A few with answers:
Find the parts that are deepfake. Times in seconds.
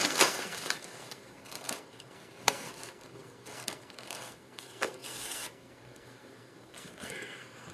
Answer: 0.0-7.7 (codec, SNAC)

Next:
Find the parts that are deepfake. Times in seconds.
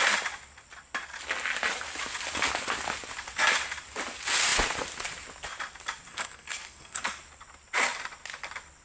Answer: 6.1-7.2 (codec, SNAC)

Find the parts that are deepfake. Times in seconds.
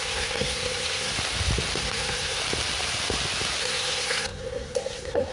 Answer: 0.0-1.1 (codec, SNAC); 1.8-2.4; 3.6-5.3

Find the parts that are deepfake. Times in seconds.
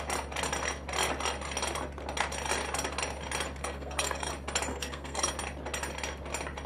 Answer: 3.6-4.3 (codec, SNAC); 4.7-5.3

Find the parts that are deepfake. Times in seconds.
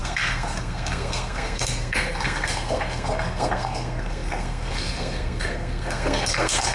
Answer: 0.0-6.7 (codec, SNAC)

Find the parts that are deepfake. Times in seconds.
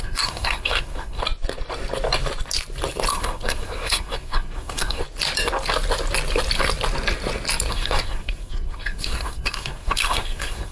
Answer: 0.0-1.2 (codec, SNAC); 3.1-5.0; 7.7-10.7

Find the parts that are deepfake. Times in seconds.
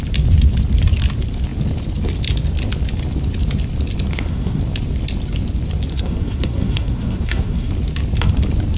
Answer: 4.1-4.6 (codec, SNAC); 5.9-7.7